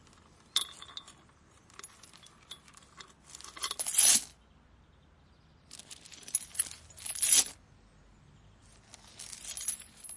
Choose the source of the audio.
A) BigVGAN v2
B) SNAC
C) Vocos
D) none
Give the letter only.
D